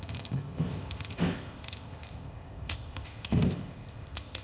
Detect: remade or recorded remade